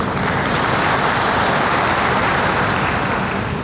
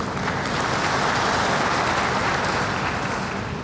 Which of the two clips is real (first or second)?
second